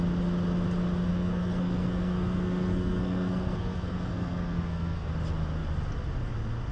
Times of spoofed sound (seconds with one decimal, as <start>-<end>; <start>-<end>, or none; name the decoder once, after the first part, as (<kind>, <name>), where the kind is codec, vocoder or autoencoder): 1.1-5.1 (codec, SNAC)